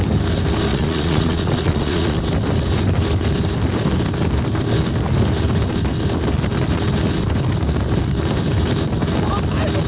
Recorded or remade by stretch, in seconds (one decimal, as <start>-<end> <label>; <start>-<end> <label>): 0.0-0.7 recorded; 0.7-2.2 remade; 2.2-9.9 recorded